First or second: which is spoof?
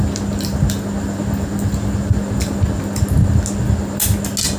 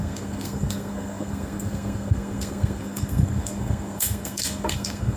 second